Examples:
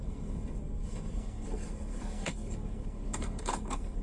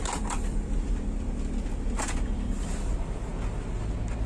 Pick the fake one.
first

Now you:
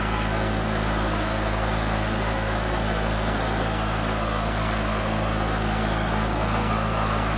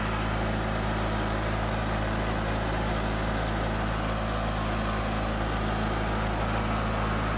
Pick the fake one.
first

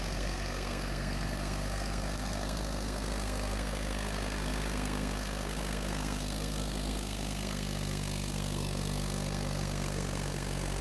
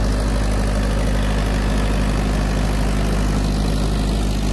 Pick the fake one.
first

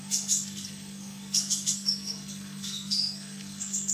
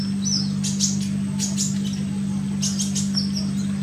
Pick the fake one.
first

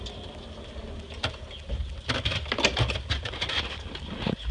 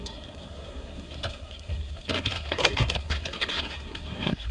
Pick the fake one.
second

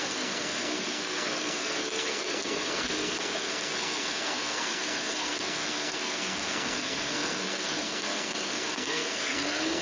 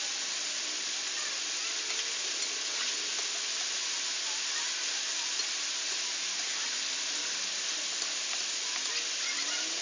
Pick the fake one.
first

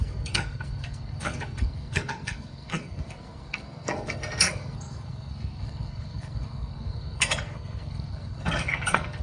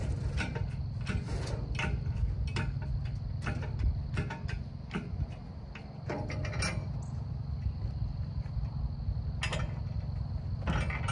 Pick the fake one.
first